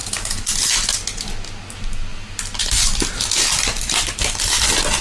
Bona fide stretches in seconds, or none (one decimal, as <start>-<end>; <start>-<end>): 0.6-2.1; 4.5-5.0